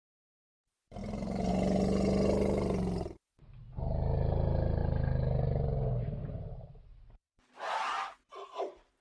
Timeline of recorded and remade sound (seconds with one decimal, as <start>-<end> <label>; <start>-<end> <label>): 0.0-9.0 recorded